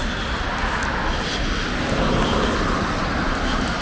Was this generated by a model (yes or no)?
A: no